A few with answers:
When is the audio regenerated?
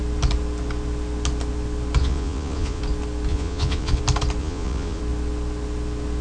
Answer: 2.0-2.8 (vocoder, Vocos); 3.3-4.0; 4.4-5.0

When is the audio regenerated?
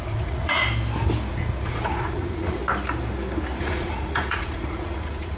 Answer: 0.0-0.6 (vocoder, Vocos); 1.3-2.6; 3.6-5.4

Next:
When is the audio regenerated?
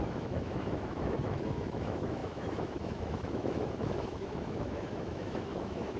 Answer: 0.0-6.0 (autoencoder, DAC-VAE)